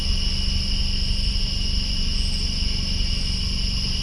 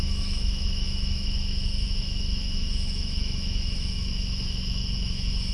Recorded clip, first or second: first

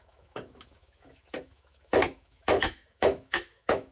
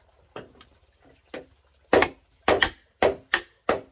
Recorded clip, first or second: second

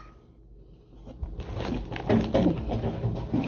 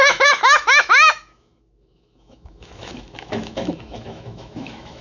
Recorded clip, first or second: first